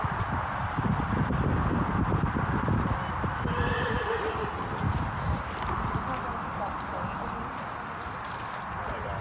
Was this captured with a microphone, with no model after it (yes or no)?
yes